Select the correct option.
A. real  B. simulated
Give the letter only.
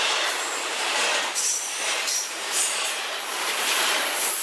B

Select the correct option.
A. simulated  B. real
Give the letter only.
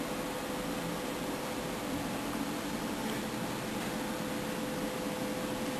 B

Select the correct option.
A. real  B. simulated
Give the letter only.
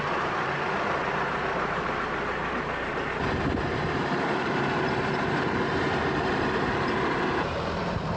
B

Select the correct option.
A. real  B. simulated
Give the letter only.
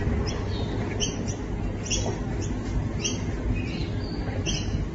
A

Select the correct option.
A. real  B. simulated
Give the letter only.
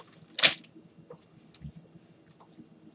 A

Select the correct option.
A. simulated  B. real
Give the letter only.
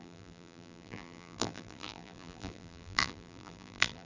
A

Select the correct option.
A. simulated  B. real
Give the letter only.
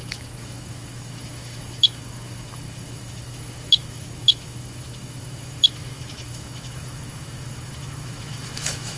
A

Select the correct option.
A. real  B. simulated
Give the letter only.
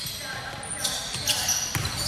A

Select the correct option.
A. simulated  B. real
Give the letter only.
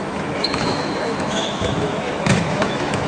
A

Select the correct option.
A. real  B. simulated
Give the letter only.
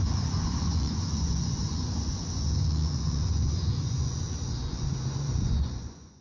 B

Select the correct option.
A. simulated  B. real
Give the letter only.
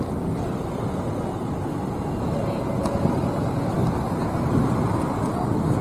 B